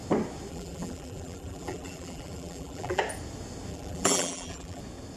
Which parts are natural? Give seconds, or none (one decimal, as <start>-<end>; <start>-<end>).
0.0-0.5; 3.0-3.7; 4.8-5.2